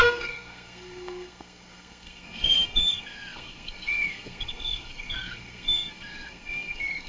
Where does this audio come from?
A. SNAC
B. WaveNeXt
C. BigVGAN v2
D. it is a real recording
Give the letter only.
A